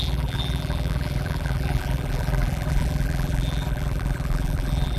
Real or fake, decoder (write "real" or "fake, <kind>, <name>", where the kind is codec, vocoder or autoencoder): fake, vocoder, BigVGAN v2